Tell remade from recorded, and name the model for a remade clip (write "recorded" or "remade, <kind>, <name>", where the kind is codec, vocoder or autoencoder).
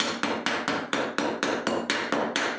recorded